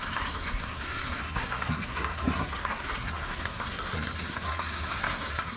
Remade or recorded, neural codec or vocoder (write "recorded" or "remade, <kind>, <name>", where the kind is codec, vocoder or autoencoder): remade, codec, SNAC